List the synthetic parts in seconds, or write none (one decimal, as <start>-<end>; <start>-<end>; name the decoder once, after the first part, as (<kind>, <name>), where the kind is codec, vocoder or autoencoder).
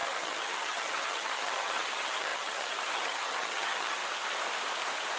0.0-4.0 (vocoder, HiFi-GAN)